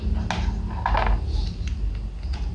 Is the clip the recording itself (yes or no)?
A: yes